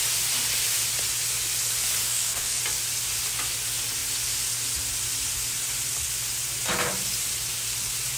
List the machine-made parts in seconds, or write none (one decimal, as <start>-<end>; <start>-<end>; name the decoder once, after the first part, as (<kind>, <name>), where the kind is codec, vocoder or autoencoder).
2.0-2.6 (codec, DAC)